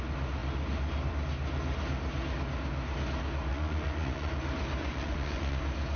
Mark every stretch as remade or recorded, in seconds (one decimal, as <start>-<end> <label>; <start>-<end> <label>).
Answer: 0.0-3.5 recorded; 3.5-4.3 remade; 4.3-4.8 recorded; 4.8-5.6 remade; 5.6-6.0 recorded